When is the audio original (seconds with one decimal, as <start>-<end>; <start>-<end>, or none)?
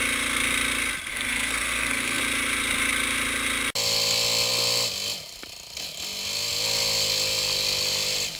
0.0-1.1; 2.2-8.4